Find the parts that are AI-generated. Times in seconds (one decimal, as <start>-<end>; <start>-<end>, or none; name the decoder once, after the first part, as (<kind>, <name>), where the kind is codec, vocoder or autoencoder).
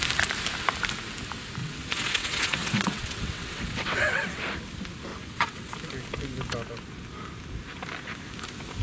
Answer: 1.6-4.4 (vocoder, WaveNeXt); 5.1-5.7